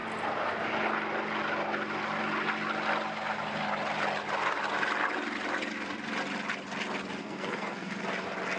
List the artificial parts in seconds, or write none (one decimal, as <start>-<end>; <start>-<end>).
7.2-8.0